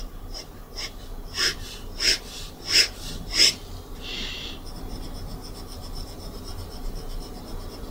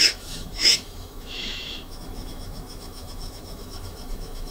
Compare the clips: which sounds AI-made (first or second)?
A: second